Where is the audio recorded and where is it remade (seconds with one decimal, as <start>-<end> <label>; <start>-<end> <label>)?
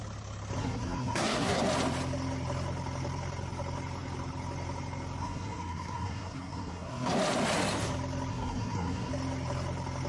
0.0-0.6 recorded; 0.6-1.6 remade; 1.6-5.2 recorded; 5.2-7.1 remade; 7.1-8.3 recorded; 8.3-9.1 remade; 9.1-10.1 recorded